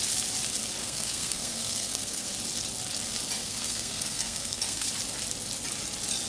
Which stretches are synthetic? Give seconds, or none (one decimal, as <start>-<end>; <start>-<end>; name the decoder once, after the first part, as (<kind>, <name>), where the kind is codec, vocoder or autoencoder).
0.8-2.3 (codec, SNAC); 3.4-4.9